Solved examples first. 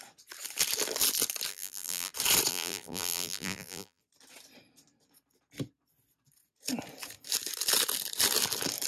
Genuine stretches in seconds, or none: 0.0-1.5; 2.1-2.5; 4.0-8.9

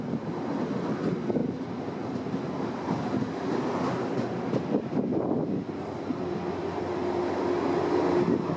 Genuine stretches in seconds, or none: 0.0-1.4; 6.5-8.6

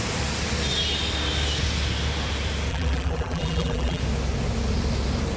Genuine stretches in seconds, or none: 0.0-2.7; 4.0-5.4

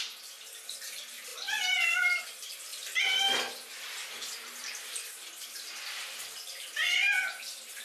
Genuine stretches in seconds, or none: 0.0-1.3; 2.2-2.7

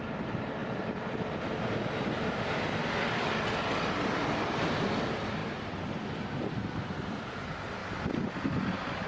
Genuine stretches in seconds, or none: 7.8-8.7